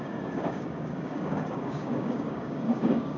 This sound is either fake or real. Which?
fake